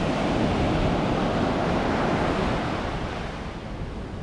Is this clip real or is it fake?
real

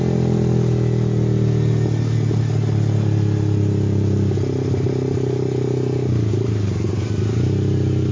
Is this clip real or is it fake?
real